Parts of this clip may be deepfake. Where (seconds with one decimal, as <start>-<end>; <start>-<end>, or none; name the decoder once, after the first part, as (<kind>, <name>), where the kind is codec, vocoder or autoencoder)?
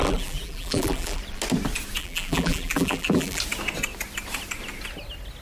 0.0-1.2 (vocoder, BigVGAN v2); 2.0-3.4